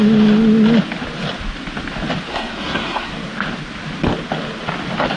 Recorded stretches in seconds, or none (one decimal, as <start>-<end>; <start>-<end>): 0.0-2.3; 3.1-5.2